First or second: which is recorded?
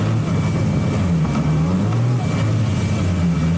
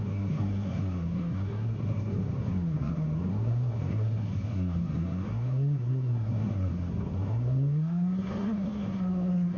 first